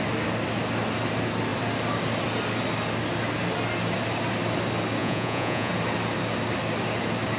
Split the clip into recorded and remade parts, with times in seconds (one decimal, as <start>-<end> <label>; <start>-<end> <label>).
0.0-5.0 recorded; 5.0-5.7 remade; 5.7-7.4 recorded